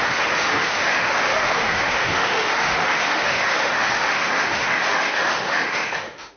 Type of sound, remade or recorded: remade